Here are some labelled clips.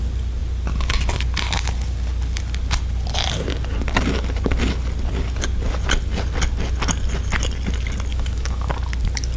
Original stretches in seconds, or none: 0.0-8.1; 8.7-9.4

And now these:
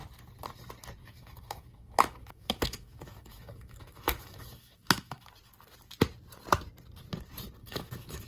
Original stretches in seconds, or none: 0.0-1.0; 5.3-7.6

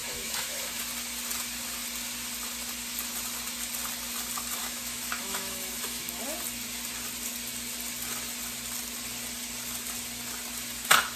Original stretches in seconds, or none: 0.8-4.6; 6.2-11.2

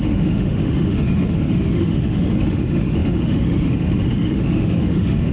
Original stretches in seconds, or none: none

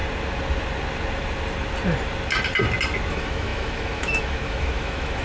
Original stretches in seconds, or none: 0.0-3.1